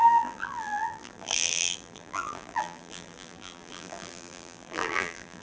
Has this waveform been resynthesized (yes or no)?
yes